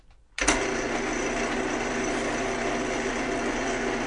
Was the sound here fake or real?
real